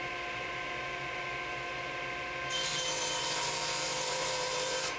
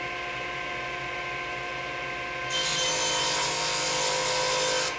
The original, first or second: second